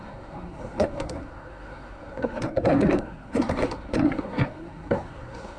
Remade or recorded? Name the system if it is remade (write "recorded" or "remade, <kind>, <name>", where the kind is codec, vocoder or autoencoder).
remade, codec, SNAC